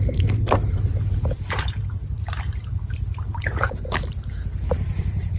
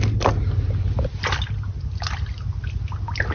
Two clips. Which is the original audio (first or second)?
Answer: second